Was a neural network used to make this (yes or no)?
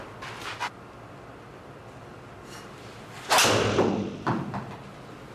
no